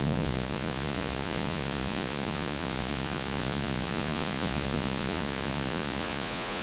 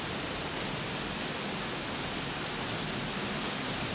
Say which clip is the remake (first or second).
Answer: first